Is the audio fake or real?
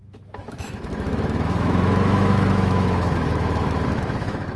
fake